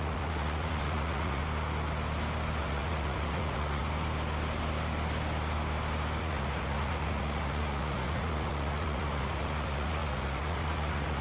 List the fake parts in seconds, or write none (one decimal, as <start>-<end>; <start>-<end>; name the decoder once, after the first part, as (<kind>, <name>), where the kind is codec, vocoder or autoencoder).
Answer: 0.0-1.4 (vocoder, Vocos); 2.6-3.8; 6.2-11.2